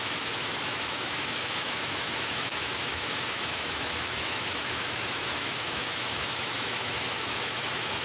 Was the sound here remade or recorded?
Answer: remade